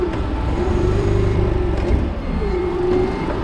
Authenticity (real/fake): fake